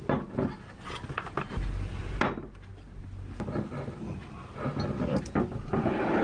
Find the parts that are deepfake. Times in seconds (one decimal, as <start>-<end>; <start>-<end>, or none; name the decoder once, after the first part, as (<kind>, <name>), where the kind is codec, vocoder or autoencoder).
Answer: none